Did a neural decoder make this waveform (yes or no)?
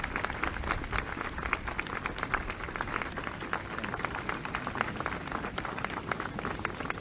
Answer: no